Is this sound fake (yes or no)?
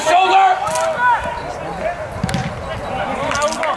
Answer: no